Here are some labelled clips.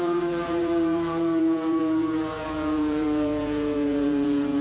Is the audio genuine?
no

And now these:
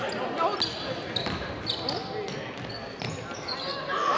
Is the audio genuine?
yes